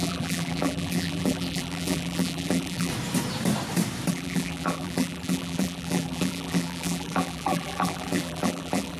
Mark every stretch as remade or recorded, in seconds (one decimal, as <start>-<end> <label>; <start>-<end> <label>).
0.0-2.9 remade; 2.9-4.1 recorded; 4.1-9.0 remade